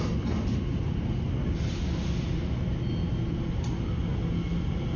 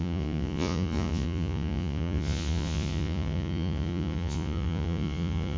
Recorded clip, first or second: first